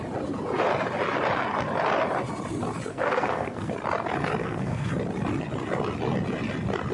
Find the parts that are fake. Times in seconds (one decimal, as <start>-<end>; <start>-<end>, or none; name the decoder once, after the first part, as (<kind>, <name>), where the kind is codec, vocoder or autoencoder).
2.9-3.7 (codec, SNAC); 4.4-4.9